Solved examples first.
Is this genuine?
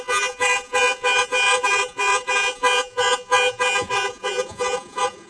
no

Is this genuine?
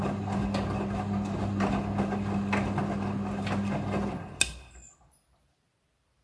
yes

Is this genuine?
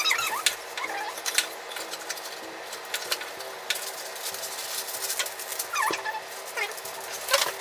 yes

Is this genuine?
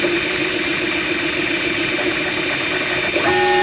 yes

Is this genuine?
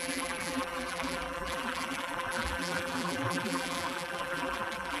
no